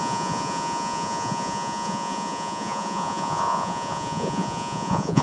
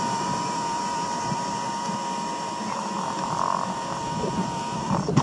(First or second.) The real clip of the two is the second